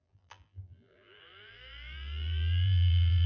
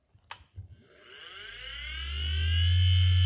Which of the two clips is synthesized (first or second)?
first